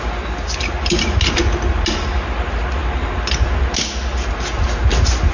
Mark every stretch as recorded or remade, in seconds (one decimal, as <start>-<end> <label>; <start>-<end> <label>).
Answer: 0.0-5.3 recorded